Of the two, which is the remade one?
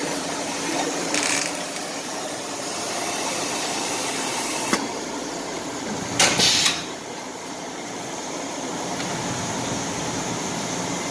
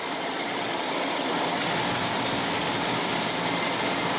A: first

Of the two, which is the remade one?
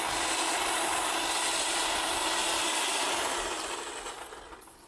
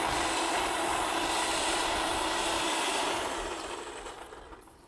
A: second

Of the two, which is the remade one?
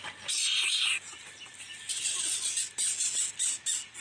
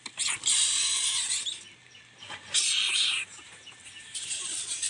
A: second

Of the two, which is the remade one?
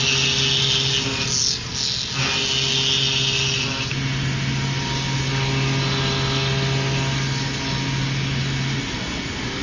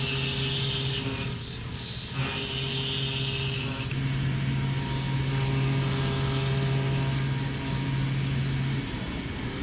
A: second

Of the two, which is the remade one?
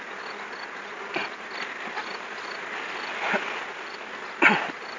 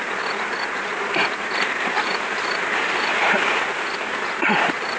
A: second